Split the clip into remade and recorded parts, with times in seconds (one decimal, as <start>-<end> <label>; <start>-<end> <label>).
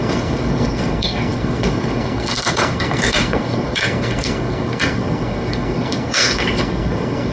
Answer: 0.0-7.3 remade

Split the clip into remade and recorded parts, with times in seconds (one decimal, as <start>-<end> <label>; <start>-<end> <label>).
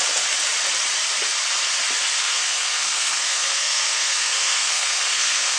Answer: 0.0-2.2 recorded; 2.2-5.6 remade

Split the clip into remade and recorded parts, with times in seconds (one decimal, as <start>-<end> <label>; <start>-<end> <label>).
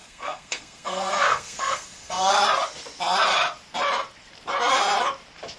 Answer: 0.0-2.3 remade; 2.3-5.6 recorded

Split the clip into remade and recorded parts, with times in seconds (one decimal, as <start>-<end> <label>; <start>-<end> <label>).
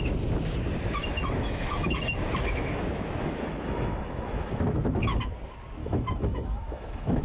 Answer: 0.0-1.2 recorded; 1.2-5.2 remade; 5.2-5.8 recorded; 5.8-7.2 remade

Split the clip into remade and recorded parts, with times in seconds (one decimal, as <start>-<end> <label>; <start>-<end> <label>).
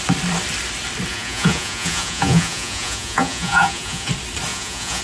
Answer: 0.0-1.1 recorded; 1.1-4.1 remade; 4.1-4.5 recorded; 4.5-5.0 remade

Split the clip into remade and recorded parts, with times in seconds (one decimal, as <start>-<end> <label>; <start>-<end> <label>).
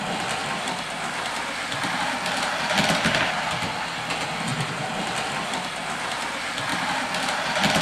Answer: 0.0-4.5 recorded; 4.5-5.0 remade; 5.0-7.8 recorded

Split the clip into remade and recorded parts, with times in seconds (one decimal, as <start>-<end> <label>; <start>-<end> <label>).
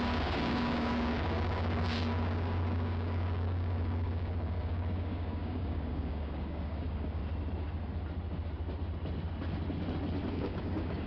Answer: 0.0-7.2 remade; 7.2-10.3 recorded; 10.3-11.1 remade